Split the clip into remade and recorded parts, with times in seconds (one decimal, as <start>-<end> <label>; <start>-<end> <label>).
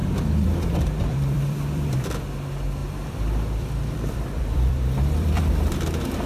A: 0.0-2.2 remade; 2.2-2.8 recorded; 2.8-5.4 remade; 5.4-6.3 recorded